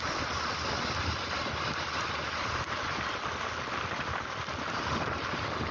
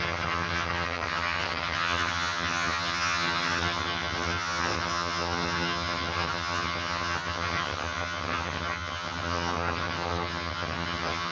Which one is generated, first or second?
second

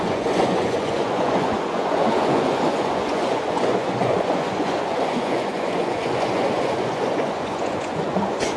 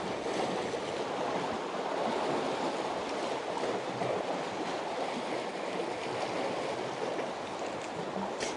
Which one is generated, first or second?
first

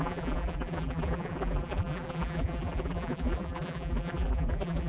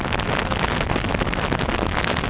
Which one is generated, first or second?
first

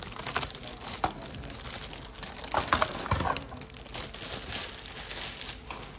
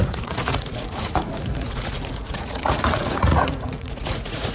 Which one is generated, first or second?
second